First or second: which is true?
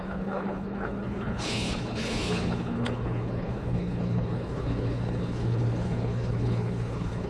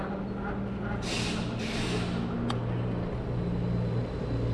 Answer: second